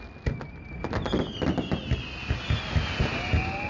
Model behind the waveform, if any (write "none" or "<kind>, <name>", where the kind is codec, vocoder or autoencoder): none